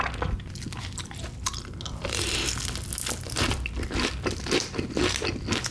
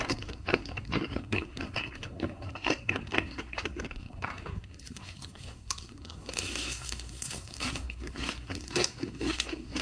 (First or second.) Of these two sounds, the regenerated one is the second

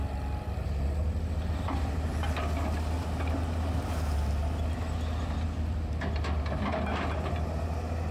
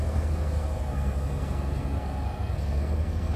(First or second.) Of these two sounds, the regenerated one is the second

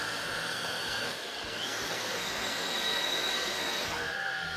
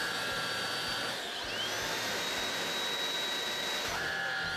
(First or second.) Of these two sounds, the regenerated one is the first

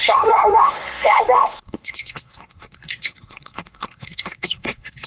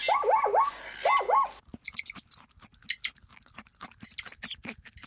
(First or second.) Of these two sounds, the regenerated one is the first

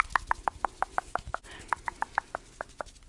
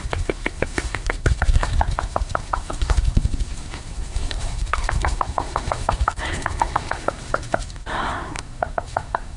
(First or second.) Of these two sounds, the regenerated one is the second